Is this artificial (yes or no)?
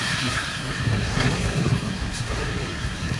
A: yes